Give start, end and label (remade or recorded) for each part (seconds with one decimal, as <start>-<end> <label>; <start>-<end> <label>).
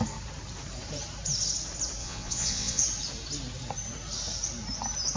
0.0-2.0 recorded; 2.0-2.8 remade; 2.8-5.2 recorded